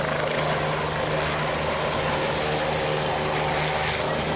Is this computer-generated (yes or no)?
no